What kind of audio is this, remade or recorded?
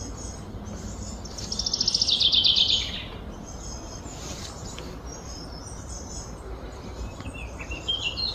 recorded